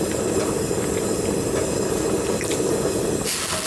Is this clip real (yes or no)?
yes